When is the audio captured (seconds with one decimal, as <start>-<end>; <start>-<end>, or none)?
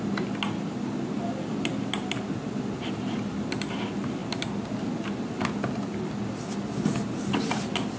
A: 0.0-8.0